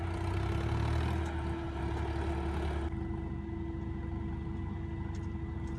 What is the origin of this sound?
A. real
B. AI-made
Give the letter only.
A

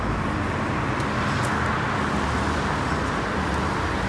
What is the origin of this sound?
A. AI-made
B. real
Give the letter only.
B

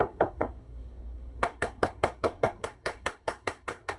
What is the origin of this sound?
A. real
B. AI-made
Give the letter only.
B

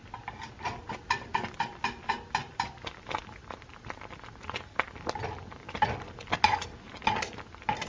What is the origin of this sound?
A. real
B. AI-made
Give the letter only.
A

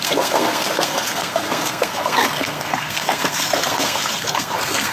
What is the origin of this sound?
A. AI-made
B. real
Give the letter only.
A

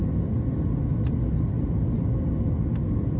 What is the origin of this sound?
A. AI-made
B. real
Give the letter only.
B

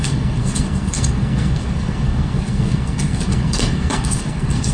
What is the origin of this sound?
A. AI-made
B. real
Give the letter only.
A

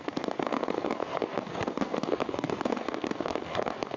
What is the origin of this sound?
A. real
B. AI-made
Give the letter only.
B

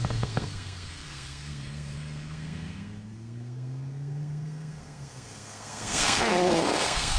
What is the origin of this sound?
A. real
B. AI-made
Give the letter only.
B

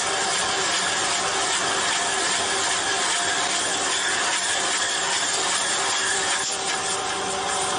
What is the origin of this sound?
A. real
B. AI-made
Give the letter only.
A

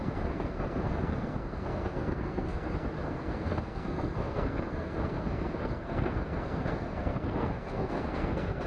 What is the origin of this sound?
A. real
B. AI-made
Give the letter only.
B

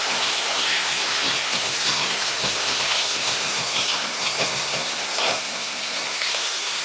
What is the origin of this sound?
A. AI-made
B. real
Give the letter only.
A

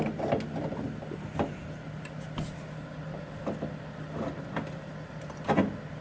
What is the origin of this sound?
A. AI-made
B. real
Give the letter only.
B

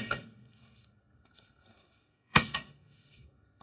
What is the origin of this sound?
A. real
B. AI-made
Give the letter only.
B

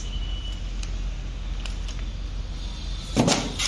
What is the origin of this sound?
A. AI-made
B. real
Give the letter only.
B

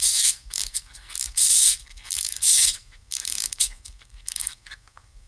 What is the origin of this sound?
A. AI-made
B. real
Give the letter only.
A